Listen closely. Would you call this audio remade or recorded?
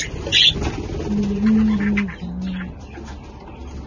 recorded